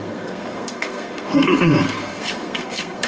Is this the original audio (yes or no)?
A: no